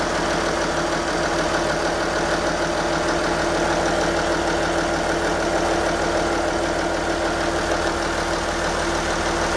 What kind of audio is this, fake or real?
real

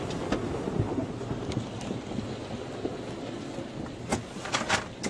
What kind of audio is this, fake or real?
real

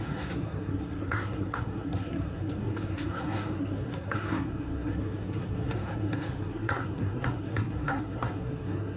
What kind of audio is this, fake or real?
fake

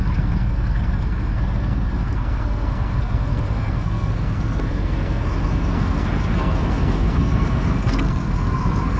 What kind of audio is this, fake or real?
fake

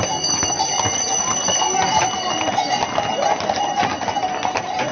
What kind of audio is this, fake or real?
real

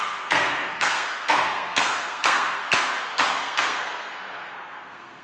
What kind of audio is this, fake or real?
fake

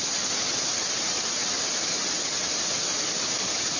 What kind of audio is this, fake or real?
real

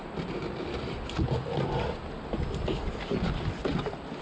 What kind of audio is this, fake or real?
real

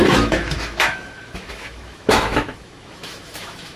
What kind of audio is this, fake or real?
fake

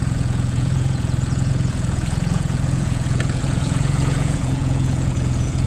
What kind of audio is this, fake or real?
fake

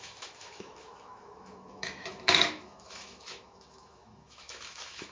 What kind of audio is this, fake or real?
fake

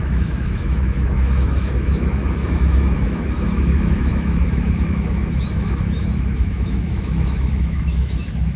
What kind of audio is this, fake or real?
fake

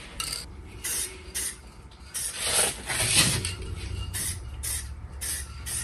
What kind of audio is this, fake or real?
fake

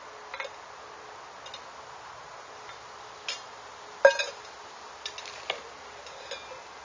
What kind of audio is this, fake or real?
real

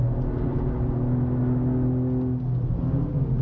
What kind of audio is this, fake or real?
real